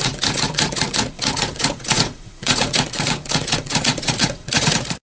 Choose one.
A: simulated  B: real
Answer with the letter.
A